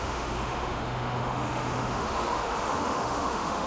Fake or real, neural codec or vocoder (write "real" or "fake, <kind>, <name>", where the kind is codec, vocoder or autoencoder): fake, autoencoder, DAC-VAE